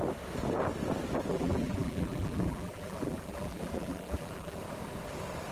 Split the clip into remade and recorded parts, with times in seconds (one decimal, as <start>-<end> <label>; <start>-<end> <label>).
0.0-1.3 recorded; 1.3-4.6 remade; 4.6-5.5 recorded